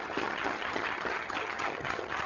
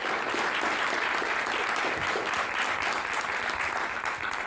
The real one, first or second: second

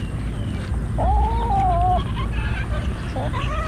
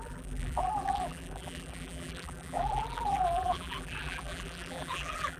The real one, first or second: first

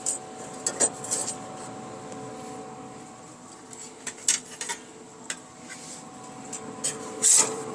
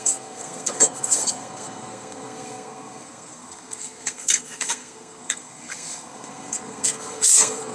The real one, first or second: first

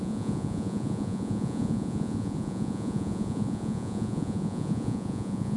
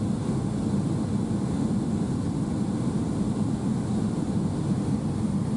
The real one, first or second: second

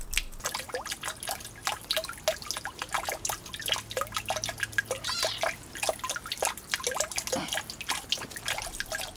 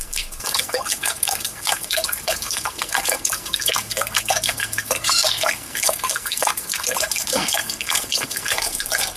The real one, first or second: first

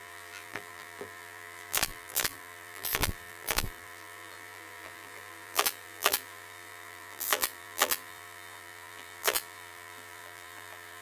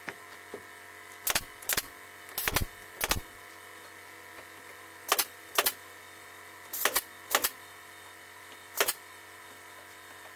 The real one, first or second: second